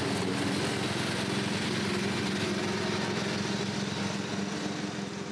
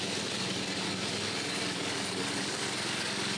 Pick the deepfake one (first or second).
second